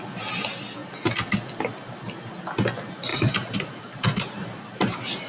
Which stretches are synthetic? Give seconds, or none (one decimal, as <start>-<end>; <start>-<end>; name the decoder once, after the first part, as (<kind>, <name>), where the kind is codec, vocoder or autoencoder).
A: 3.1-5.3 (vocoder, BigVGAN v2)